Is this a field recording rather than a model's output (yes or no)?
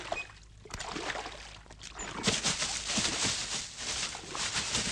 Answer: yes